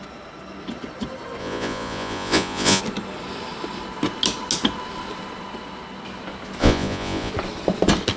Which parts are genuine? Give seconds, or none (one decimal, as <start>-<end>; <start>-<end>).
0.0-1.4; 2.8-6.6; 7.3-8.2